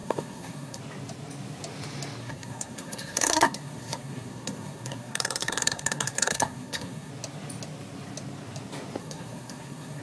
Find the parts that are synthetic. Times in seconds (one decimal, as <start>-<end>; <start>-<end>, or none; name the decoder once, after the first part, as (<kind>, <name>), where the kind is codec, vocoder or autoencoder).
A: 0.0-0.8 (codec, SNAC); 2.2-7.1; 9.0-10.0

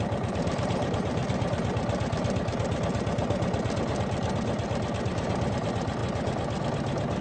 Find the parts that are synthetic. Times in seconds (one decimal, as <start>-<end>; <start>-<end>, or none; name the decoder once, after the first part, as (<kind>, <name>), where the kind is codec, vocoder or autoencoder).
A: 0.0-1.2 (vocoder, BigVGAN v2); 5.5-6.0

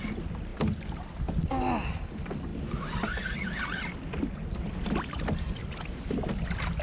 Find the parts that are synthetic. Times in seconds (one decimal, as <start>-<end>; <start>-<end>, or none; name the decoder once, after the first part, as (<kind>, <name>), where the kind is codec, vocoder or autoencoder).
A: none

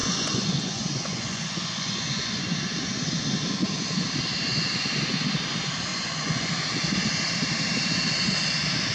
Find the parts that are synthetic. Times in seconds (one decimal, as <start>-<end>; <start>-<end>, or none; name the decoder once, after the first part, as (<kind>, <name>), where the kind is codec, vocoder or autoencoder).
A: 0.0-2.4 (vocoder, Vocos); 5.9-6.5

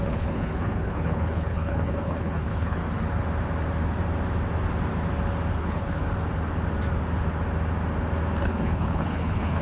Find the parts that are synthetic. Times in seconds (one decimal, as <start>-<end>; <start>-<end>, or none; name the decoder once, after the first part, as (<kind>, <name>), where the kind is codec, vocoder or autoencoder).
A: 0.0-2.8 (codec, HILCodec); 5.6-6.0; 8.4-9.6